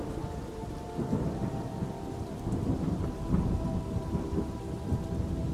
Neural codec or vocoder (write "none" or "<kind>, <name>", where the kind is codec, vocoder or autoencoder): none